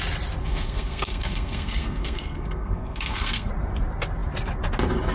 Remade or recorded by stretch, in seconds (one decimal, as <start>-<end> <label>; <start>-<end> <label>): 0.0-0.4 recorded; 0.4-3.5 remade; 3.5-5.1 recorded